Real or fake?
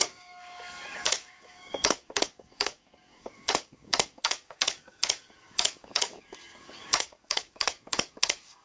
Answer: fake